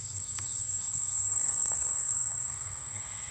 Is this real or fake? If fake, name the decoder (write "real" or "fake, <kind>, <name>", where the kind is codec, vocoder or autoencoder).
fake, codec, SNAC